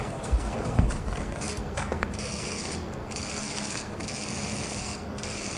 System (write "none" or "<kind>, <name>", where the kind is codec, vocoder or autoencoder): codec, SNAC